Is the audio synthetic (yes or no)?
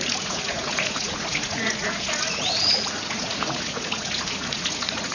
yes